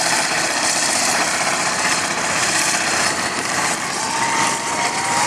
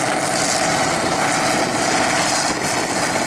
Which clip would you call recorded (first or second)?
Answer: second